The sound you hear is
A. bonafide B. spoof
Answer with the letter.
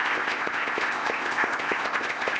B